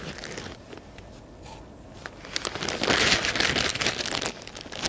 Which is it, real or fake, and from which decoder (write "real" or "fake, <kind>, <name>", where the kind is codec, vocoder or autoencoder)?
real